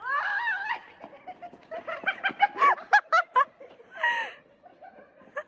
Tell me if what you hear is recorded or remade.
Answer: recorded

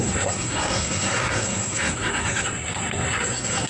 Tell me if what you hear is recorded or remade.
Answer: remade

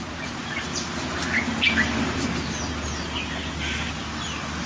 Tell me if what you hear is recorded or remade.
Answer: recorded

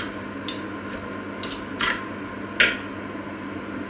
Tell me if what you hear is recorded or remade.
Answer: recorded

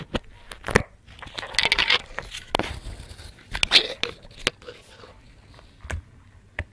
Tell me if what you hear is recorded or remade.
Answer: recorded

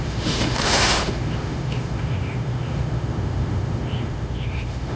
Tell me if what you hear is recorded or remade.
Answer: remade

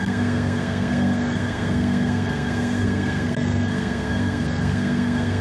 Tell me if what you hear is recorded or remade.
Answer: remade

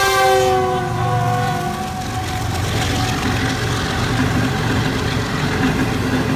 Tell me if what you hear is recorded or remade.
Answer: recorded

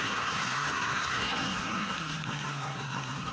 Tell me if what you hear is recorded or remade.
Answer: remade